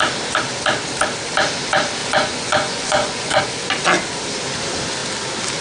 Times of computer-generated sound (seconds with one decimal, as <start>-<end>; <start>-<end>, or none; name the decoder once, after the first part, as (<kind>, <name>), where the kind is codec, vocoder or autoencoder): 2.0-3.4 (vocoder, Vocos)